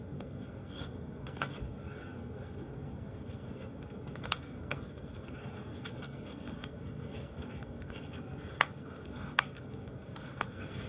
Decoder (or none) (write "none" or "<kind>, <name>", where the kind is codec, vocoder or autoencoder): codec, SNAC